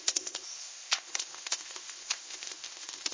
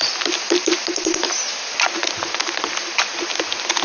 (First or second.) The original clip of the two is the second